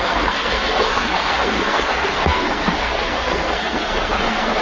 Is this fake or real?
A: fake